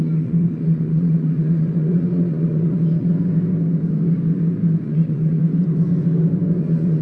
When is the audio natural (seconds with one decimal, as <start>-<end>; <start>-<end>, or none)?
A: 3.1-4.8; 5.4-6.6